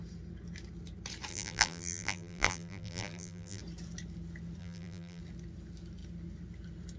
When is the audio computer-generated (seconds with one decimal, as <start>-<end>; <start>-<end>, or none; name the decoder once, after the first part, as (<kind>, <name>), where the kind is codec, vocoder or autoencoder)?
1.3-3.6 (vocoder, BigVGAN v2); 4.6-5.2